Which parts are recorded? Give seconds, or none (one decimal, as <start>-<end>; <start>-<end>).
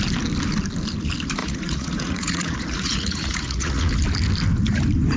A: 0.0-1.4; 3.9-5.2